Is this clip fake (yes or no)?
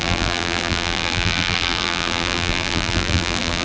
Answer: yes